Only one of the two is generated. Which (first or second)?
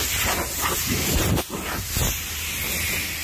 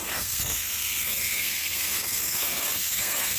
second